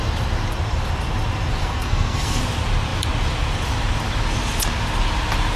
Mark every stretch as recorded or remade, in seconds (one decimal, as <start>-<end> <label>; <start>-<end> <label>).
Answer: 0.0-1.6 recorded; 1.6-2.4 remade; 2.4-5.6 recorded